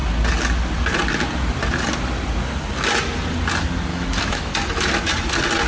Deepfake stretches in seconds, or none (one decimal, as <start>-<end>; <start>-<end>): 3.9-4.5